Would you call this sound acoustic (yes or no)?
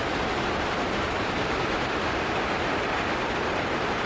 yes